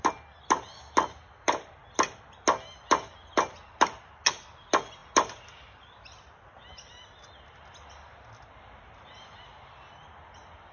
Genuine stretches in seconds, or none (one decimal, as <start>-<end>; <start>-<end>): 0.0-10.7